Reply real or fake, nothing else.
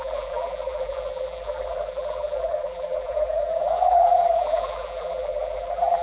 fake